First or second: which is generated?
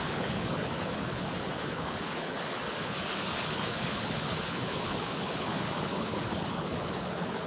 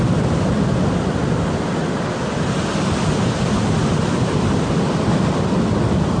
first